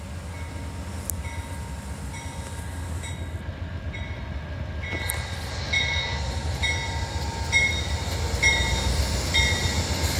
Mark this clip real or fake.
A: real